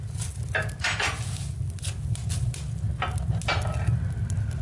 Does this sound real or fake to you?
real